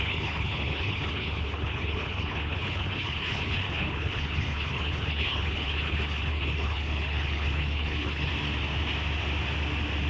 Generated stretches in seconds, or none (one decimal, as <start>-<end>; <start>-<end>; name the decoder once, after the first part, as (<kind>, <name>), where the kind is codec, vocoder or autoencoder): 0.0-8.3 (codec, HILCodec)